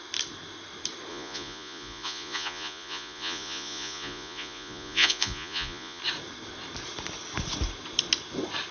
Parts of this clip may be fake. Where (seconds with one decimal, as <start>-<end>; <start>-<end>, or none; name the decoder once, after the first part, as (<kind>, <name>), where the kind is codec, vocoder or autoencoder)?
1.1-6.0 (vocoder, Vocos)